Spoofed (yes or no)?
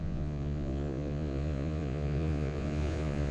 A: yes